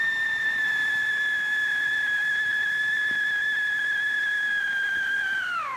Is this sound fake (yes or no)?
yes